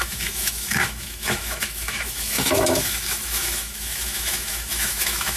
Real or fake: fake